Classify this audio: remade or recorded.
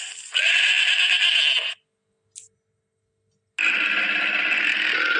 recorded